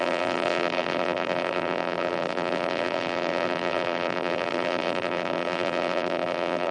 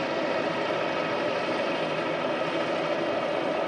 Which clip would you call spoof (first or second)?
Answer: first